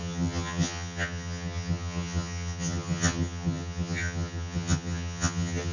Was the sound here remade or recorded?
remade